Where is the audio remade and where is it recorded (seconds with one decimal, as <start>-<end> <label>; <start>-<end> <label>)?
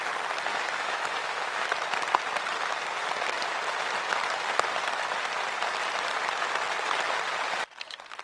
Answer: 0.0-0.5 recorded; 0.5-1.7 remade; 1.7-8.2 recorded